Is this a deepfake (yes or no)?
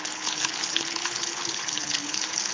yes